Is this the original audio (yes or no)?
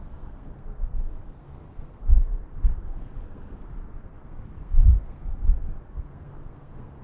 no